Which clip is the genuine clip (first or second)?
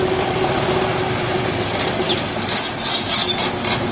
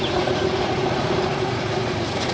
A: first